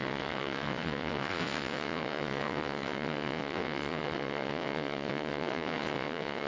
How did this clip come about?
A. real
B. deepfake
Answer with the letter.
B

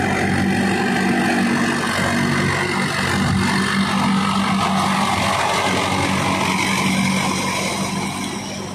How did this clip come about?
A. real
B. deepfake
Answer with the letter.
A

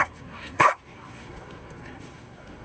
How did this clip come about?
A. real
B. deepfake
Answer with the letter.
B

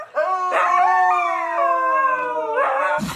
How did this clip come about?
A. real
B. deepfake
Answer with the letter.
A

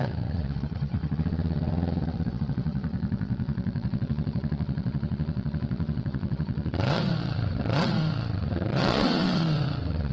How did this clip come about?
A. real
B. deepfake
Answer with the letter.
B